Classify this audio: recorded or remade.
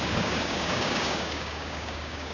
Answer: remade